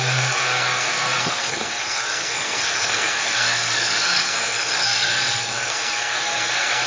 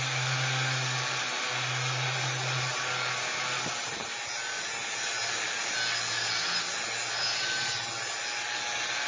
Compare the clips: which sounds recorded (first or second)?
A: second